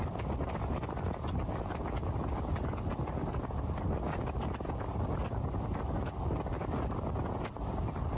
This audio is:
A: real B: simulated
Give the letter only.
A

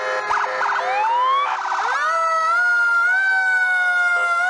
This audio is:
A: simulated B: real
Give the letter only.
B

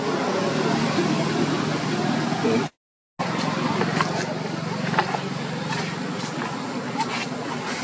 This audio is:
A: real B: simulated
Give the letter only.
A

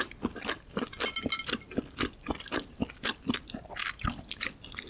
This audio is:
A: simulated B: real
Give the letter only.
B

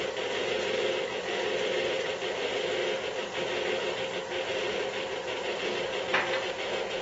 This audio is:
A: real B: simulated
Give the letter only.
A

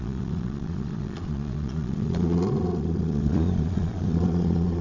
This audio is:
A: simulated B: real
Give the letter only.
A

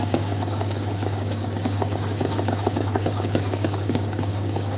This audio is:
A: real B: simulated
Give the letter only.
B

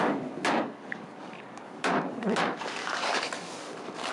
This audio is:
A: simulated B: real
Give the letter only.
A